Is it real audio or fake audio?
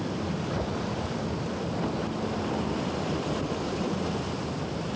fake